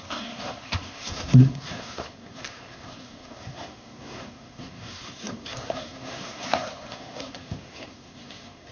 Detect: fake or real fake